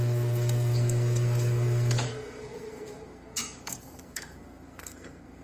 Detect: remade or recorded remade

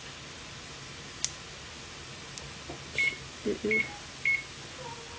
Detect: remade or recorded recorded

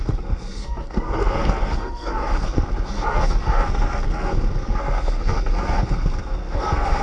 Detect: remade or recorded remade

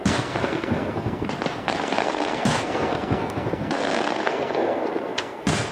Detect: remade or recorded remade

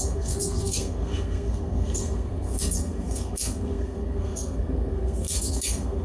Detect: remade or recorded remade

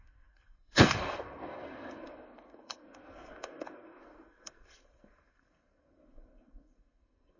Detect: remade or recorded remade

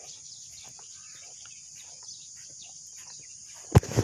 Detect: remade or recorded recorded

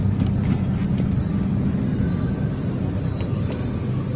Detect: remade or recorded recorded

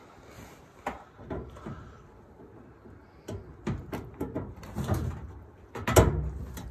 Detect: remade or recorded recorded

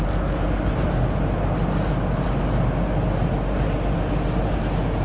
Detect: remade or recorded recorded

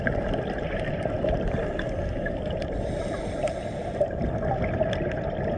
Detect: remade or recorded recorded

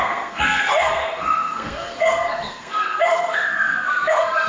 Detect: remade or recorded remade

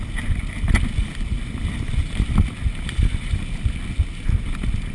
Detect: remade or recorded recorded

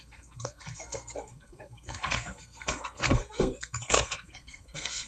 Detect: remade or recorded remade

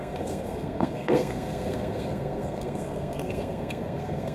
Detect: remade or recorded remade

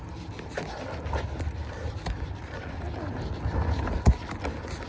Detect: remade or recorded recorded